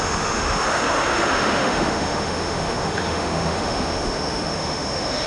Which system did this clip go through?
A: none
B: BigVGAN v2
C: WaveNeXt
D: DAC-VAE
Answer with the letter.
D